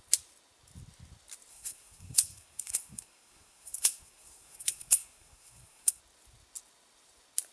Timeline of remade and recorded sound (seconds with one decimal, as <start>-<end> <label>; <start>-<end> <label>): 0.0-1.5 recorded; 1.5-6.0 remade; 6.0-7.5 recorded